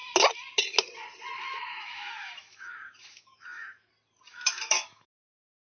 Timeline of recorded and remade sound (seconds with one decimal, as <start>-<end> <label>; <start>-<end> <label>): 0.0-1.7 recorded; 1.7-3.9 remade; 3.9-4.3 recorded; 4.3-5.6 remade